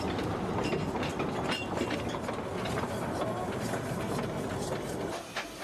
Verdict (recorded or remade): recorded